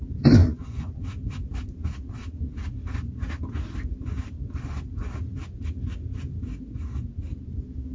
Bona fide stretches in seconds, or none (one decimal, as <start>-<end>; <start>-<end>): 0.0-0.4; 1.0-7.9